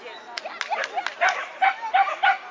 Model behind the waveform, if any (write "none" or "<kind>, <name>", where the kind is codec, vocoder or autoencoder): none